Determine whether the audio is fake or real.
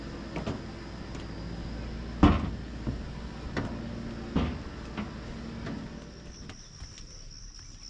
real